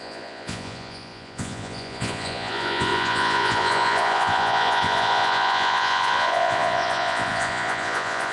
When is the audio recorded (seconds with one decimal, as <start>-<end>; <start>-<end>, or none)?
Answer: none